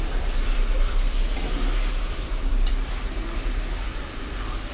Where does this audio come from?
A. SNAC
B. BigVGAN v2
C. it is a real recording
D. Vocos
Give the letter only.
B